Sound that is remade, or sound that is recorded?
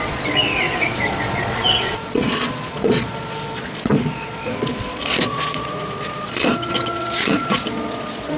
remade